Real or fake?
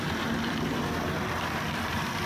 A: fake